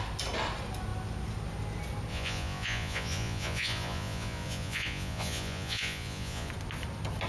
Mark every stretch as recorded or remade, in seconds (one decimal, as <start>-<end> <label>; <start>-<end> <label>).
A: 0.0-2.1 recorded; 2.1-6.5 remade; 6.5-7.3 recorded